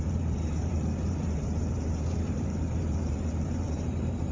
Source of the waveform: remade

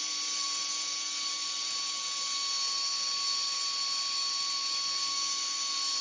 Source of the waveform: recorded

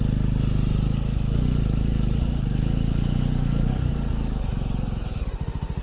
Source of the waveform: recorded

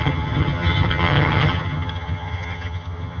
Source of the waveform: remade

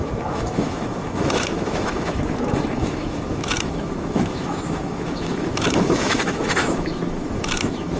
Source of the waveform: remade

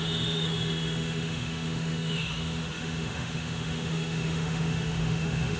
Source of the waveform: remade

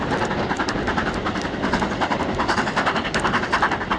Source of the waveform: recorded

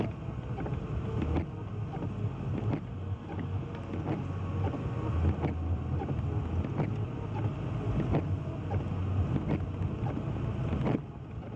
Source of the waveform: recorded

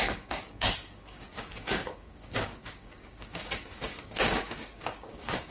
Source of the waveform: remade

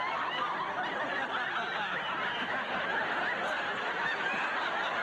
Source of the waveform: recorded